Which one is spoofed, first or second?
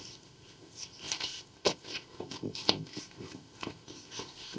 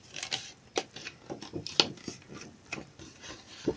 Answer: first